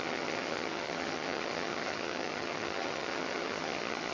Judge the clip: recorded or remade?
remade